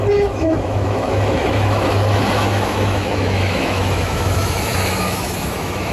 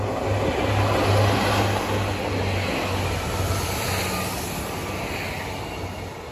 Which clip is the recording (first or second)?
second